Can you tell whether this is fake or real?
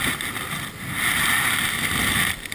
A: real